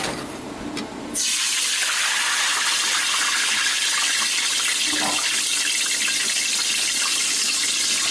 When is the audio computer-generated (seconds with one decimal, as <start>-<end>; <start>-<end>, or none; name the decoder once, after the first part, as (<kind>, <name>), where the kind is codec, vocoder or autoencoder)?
none